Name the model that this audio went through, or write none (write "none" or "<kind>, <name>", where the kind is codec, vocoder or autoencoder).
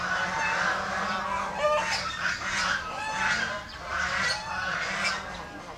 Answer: none